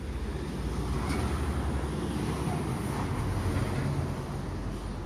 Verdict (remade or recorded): recorded